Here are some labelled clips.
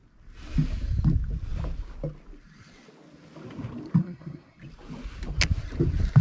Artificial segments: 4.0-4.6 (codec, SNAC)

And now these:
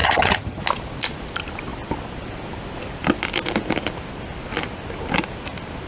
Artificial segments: 0.0-0.6 (vocoder, HiFi-GAN)

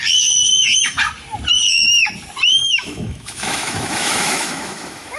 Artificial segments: 0.5-1.0 (autoencoder, DAC-VAE); 2.6-5.2

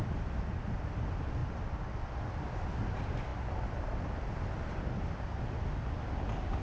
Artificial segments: none

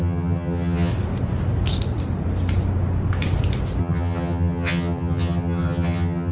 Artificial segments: 0.0-0.9 (vocoder, HiFi-GAN); 3.8-6.3

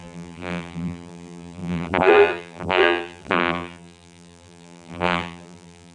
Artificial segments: 0.0-5.9 (vocoder, BigVGAN v2)

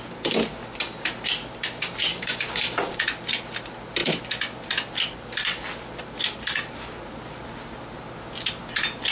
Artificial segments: 2.1-3.0 (codec, DAC)